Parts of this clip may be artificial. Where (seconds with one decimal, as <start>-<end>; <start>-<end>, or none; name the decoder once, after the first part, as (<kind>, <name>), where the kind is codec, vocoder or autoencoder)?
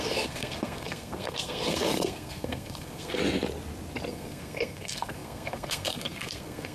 0.0-3.2 (codec, SNAC); 4.1-6.7